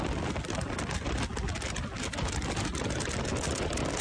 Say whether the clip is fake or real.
real